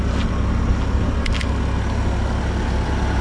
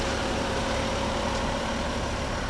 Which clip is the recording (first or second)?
first